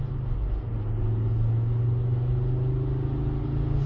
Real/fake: real